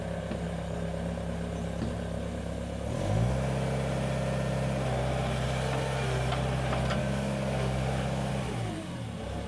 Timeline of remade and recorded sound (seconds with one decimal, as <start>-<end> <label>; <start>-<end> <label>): 0.0-7.0 recorded; 7.0-8.3 remade; 8.3-9.5 recorded